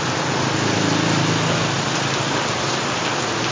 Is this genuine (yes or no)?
yes